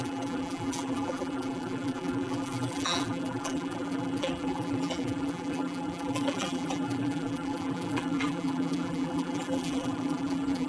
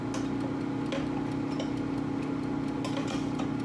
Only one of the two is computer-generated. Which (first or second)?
first